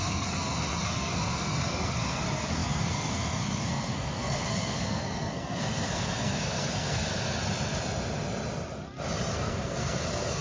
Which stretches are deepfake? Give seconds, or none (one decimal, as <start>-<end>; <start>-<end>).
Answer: 0.0-7.1; 9.3-10.4

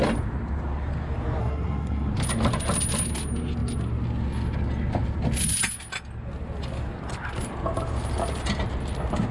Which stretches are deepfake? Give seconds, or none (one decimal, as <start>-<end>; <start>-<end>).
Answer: 1.4-2.1

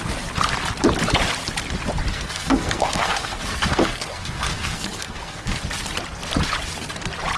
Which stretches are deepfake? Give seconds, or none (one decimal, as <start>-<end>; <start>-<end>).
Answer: 2.1-5.6

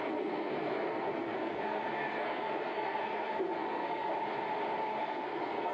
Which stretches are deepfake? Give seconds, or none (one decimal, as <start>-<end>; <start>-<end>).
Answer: 0.0-4.1; 5.0-5.7

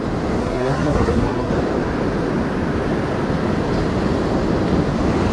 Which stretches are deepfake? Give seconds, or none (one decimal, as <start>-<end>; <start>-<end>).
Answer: 0.4-1.5

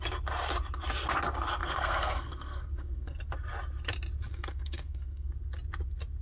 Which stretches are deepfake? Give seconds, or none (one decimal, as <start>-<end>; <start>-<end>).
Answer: 1.6-3.2; 4.3-5.3

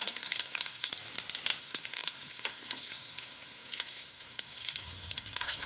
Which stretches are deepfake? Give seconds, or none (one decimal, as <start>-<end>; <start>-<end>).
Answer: 0.0-0.9; 1.6-5.7

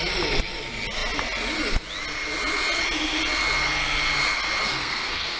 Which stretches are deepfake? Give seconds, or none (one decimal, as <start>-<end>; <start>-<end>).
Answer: 4.8-5.4